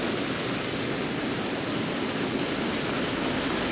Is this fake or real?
real